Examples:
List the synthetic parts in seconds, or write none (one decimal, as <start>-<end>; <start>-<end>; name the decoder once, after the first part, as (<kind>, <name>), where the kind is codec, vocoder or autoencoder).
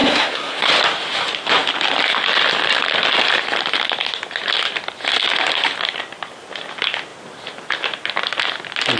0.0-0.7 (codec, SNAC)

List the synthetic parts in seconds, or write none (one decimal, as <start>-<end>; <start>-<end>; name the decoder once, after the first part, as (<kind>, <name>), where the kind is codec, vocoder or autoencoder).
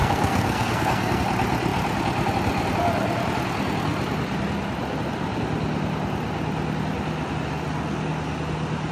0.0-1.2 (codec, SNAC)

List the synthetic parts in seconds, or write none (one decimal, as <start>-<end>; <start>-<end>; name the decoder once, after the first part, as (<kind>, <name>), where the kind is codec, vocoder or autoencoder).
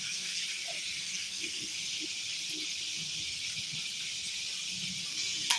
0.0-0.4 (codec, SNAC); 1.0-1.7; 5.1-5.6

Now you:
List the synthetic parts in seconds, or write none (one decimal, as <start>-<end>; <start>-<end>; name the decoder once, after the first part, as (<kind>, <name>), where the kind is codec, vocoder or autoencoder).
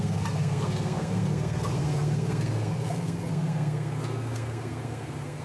0.0-5.4 (codec, SNAC)